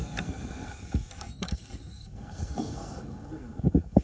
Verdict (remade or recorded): remade